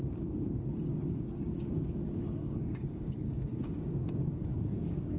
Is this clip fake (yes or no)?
yes